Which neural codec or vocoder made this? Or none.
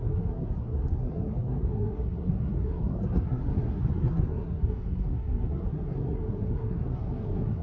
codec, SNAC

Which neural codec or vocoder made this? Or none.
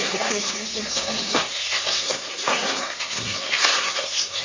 codec, SNAC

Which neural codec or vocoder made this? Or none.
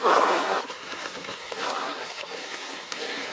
codec, SNAC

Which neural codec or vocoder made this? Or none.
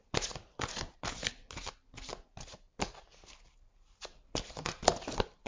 none